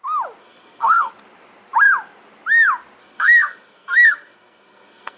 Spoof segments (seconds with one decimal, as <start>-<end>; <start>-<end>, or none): 0.4-1.1; 3.0-5.2